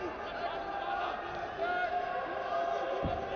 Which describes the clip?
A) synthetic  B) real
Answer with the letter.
B